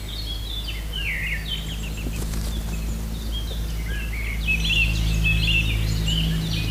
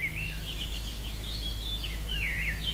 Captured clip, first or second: first